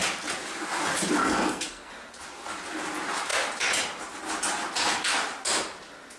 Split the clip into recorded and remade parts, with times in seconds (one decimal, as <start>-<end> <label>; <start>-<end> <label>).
0.0-1.2 recorded; 1.2-1.9 remade; 1.9-6.2 recorded